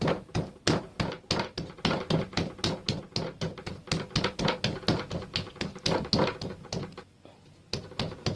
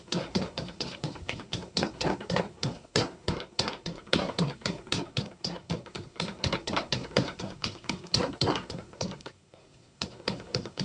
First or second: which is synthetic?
second